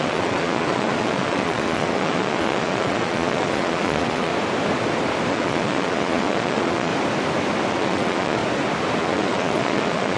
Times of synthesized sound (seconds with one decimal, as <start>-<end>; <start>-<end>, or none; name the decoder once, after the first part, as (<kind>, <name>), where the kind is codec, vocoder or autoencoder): 0.0-4.3 (vocoder, Vocos); 5.3-6.9; 7.7-8.4; 9.0-10.2